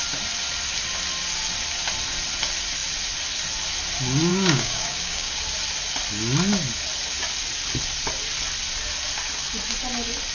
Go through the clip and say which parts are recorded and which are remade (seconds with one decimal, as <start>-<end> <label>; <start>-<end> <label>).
0.0-4.3 recorded; 4.3-5.4 remade; 5.4-10.3 recorded